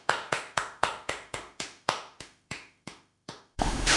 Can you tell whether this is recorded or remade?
remade